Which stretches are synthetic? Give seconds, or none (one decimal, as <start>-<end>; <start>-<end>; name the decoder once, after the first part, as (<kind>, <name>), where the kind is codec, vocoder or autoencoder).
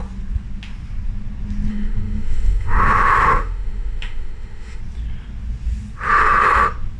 1.7-4.8 (autoencoder, DAC-VAE)